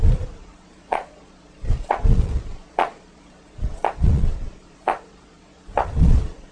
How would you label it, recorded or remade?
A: remade